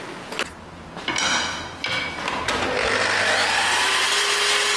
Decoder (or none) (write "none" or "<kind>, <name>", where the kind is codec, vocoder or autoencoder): none